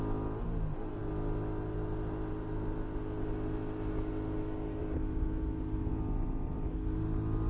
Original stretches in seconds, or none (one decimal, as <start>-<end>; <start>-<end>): 0.0-7.5